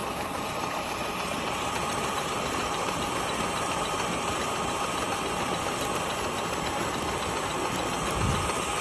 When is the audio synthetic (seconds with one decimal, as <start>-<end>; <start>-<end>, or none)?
0.0-3.1